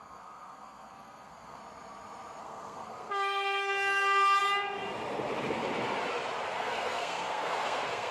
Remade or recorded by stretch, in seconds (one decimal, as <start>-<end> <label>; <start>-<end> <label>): 0.0-1.6 remade; 1.6-2.4 recorded; 2.4-4.4 remade; 4.4-6.5 recorded; 6.5-8.1 remade